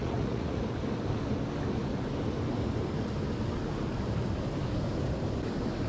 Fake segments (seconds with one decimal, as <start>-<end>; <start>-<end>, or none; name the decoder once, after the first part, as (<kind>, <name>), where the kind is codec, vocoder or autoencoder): 0.0-0.6 (vocoder, Vocos)